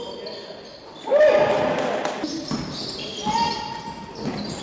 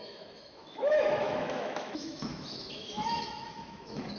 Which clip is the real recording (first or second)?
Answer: first